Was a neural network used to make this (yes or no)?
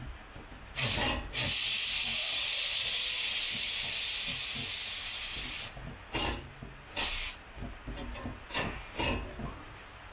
no